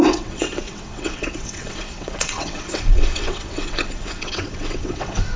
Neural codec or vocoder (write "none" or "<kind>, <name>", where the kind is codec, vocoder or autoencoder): vocoder, WaveNeXt